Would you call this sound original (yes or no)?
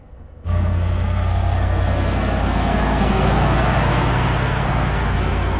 no